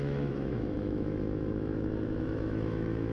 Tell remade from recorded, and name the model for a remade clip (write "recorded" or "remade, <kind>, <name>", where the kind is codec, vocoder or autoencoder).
remade, autoencoder, DAC-VAE